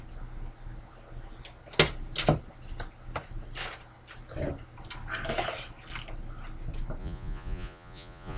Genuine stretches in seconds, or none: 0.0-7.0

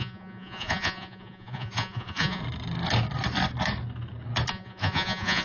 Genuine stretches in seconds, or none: 2.4-4.5

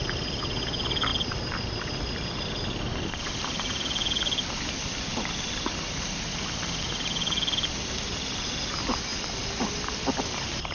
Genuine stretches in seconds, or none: 0.0-10.7

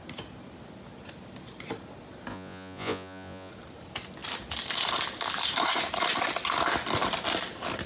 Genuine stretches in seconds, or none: 0.0-2.3; 3.5-7.9

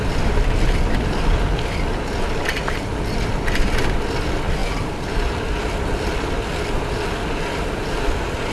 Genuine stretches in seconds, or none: 0.0-8.5